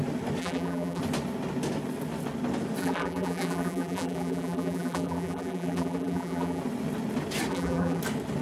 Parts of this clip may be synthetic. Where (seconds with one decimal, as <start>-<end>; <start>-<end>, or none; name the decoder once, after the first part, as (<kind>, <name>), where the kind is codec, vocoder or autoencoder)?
0.4-1.0 (vocoder, BigVGAN v2); 2.8-6.6; 7.5-8.0